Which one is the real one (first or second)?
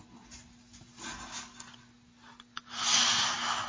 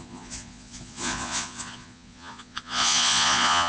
first